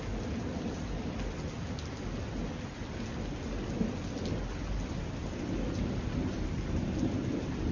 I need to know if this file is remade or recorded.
recorded